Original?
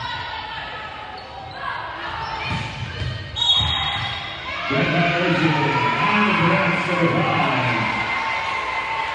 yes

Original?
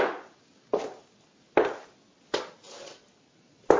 yes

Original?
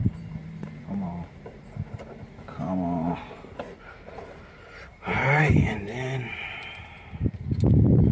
no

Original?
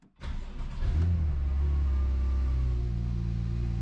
yes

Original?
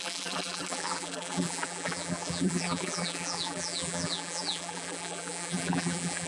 no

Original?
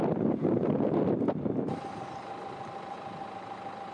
no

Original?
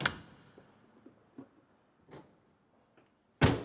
yes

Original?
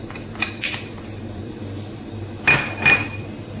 no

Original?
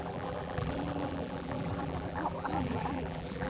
no